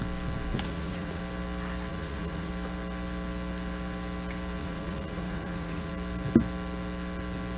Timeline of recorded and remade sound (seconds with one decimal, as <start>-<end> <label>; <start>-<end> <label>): 0.0-0.5 recorded; 0.5-1.2 remade; 1.2-1.9 recorded; 1.9-2.5 remade; 2.5-4.6 recorded; 4.6-5.9 remade; 5.9-7.6 recorded